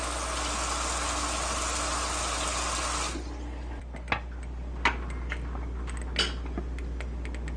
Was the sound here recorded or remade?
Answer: recorded